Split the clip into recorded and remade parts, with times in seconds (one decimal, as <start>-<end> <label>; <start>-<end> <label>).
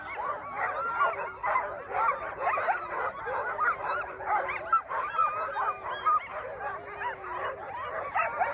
0.0-1.4 recorded; 1.4-3.1 remade; 3.1-3.8 recorded; 3.8-5.1 remade; 5.1-8.5 recorded